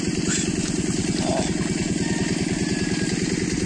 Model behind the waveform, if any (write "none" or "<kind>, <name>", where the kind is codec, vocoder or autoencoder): none